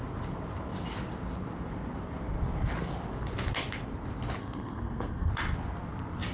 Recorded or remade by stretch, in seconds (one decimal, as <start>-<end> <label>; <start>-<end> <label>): 0.0-4.4 recorded; 4.4-5.3 remade; 5.3-6.3 recorded

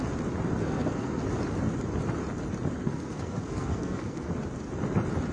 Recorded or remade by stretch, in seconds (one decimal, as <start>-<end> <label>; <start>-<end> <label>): 0.0-0.6 recorded; 0.6-1.2 remade; 1.2-2.8 recorded; 2.8-4.3 remade; 4.3-5.3 recorded

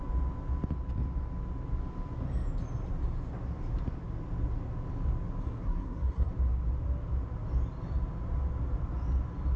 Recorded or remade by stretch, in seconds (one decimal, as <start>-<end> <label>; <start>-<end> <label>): 0.0-5.4 recorded; 5.4-6.3 remade; 6.3-9.6 recorded

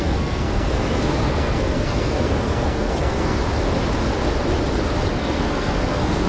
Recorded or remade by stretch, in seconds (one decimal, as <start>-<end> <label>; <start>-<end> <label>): 0.0-3.4 remade; 3.4-5.1 recorded; 5.1-6.3 remade